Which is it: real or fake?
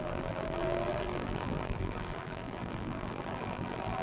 fake